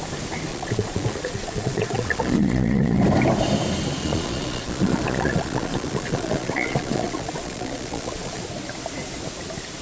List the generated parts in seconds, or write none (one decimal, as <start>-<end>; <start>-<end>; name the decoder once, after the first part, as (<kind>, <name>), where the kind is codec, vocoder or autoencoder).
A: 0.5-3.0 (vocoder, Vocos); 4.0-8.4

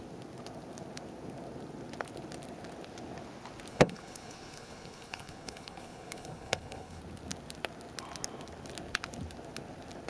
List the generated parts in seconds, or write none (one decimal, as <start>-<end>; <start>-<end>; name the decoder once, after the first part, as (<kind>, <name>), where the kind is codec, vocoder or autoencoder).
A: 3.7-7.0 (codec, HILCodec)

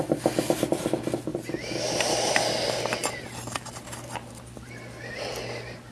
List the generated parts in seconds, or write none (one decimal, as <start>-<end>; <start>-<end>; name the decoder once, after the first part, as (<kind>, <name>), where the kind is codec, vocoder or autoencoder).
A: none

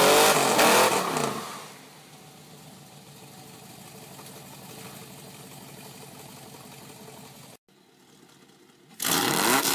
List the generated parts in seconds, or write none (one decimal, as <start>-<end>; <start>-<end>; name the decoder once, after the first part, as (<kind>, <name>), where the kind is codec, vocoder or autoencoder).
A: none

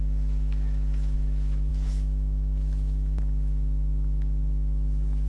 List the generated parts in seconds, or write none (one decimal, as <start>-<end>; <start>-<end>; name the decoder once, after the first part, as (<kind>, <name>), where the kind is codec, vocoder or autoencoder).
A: 0.0-5.3 (autoencoder, DAC-VAE)

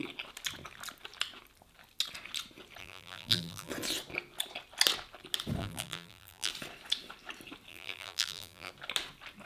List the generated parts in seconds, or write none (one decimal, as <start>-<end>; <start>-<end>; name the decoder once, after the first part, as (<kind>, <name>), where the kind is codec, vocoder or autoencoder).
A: 2.8-3.7 (vocoder, BigVGAN v2); 5.6-6.5; 7.7-8.7